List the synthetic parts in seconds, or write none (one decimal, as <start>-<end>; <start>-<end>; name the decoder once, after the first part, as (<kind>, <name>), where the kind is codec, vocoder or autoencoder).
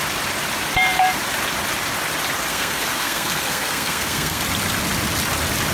2.5-4.4 (codec, SNAC)